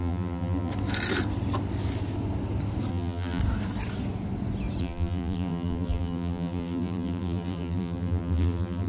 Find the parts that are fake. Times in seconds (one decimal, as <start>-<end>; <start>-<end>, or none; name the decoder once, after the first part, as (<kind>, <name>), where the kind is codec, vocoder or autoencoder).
0.0-0.7 (vocoder, BigVGAN v2); 2.9-3.4; 4.8-8.9